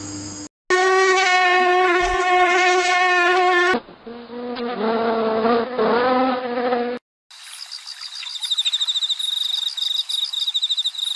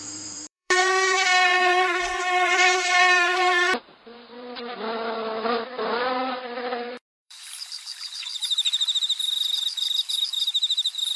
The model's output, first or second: second